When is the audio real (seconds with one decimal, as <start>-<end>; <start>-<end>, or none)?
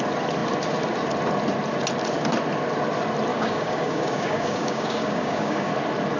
0.0-3.3; 5.7-6.2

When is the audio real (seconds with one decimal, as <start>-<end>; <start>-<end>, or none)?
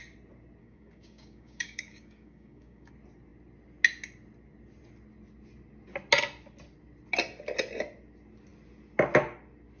0.0-0.6; 2.9-9.8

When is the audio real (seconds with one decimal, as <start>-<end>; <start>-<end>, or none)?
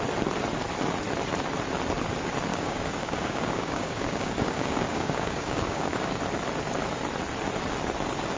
0.0-2.5; 6.2-8.4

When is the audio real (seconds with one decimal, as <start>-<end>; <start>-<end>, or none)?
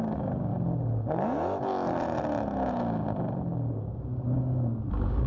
0.5-3.7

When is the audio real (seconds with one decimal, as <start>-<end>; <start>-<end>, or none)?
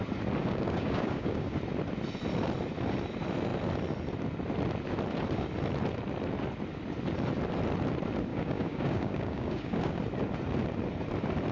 0.0-0.4; 1.6-8.3; 10.0-11.5